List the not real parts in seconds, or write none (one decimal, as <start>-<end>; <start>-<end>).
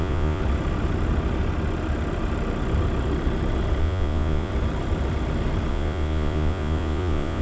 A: 0.0-0.4; 3.8-4.5; 5.7-7.4